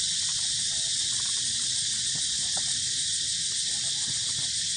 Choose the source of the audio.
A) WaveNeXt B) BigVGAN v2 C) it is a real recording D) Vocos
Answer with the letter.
C